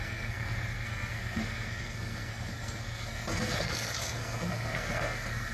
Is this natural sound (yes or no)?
no